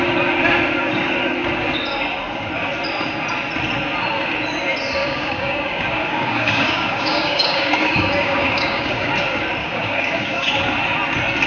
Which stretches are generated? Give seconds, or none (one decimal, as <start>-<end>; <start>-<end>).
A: 5.0-9.1; 9.6-10.6